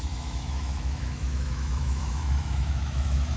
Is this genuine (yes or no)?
no